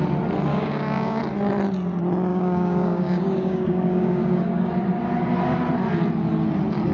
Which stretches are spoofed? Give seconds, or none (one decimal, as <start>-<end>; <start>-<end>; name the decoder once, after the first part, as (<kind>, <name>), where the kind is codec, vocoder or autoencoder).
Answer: 0.5-1.2 (codec, DAC); 2.3-4.7